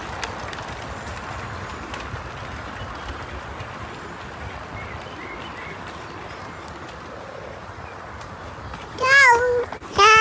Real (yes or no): yes